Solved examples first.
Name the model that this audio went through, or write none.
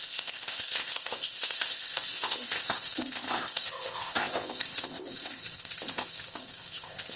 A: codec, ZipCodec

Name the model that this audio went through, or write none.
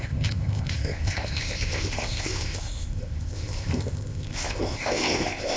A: codec, ZipCodec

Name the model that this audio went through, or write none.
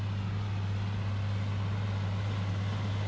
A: none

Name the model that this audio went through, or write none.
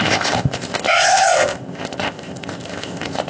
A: codec, ZipCodec